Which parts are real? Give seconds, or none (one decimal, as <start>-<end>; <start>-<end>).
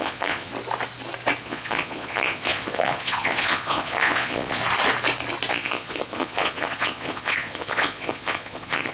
0.5-1.4; 4.6-5.5